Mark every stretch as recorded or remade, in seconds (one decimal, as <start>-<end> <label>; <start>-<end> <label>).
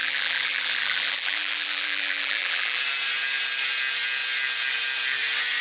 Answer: 0.0-2.8 remade; 2.8-5.6 recorded